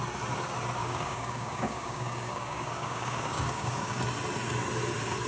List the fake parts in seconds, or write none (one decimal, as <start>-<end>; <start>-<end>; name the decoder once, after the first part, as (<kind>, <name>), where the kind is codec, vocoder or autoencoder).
0.8-4.0 (codec, DAC)